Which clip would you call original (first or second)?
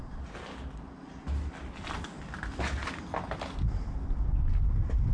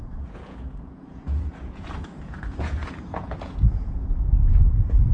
first